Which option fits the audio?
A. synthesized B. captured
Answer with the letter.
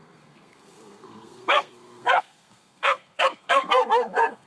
A